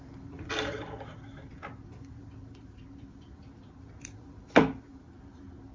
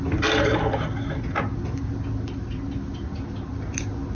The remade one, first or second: first